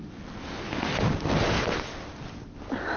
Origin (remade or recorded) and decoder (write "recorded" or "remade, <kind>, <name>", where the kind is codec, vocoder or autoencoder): recorded